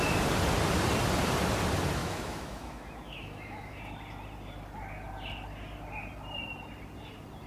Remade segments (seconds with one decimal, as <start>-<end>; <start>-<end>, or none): 2.0-3.8